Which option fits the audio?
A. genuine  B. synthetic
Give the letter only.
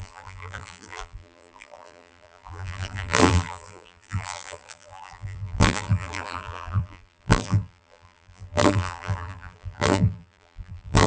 B